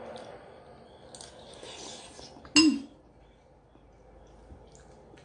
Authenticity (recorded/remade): recorded